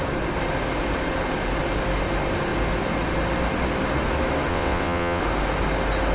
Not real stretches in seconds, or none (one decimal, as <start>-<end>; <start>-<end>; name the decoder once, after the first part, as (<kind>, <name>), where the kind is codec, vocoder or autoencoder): 4.5-5.2 (vocoder, WaveNeXt)